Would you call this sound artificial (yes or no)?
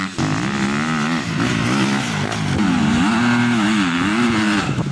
no